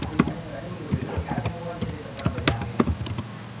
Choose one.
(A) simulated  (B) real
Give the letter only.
B